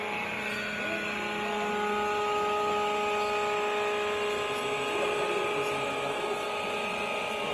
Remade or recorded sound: recorded